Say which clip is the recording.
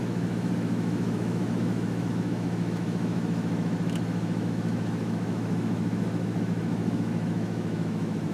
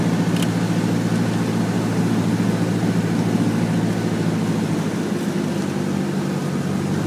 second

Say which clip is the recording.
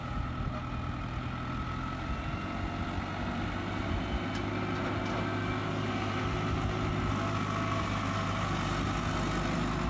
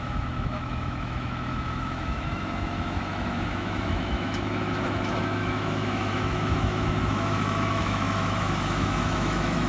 first